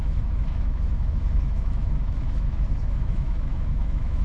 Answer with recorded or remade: remade